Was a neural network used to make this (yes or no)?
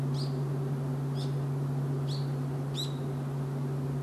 no